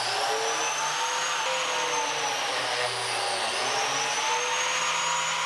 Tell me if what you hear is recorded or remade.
recorded